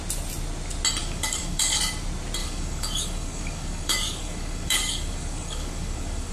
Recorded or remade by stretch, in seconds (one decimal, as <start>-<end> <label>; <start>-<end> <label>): 0.0-1.0 recorded; 1.0-1.8 remade; 1.8-2.4 recorded; 2.4-6.3 remade